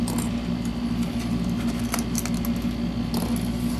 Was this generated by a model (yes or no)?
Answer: no